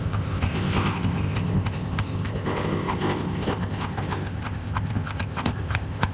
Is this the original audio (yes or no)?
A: no